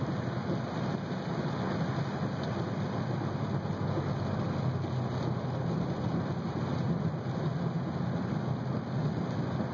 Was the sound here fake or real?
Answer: real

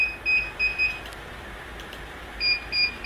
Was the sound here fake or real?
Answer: real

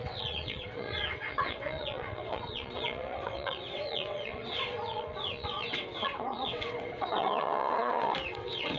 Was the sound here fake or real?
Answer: fake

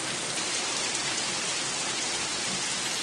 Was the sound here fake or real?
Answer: fake